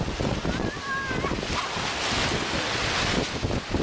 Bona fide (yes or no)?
yes